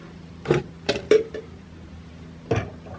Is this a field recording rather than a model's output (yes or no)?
yes